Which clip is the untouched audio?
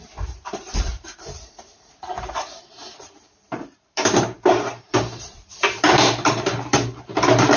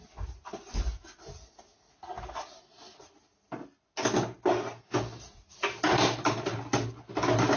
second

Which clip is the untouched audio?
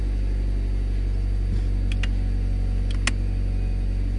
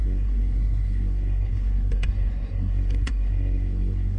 first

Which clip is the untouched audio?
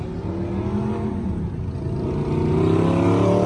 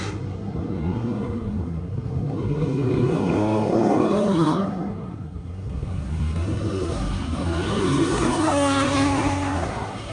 first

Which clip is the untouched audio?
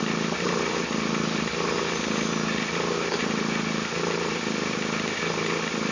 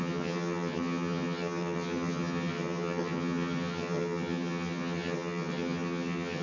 first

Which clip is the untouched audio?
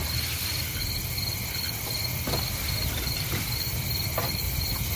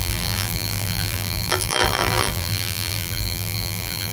first